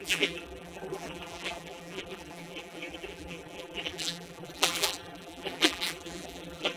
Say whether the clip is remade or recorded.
remade